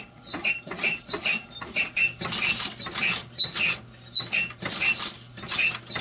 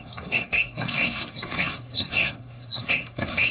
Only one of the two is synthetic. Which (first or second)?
second